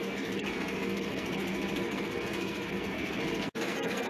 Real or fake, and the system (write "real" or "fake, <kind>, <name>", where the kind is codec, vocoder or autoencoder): fake, codec, SNAC